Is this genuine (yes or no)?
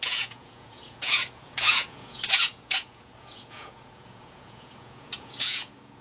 no